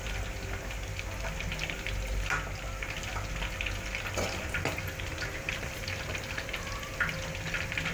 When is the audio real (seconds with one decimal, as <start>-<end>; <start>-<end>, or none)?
0.0-5.1; 5.7-7.9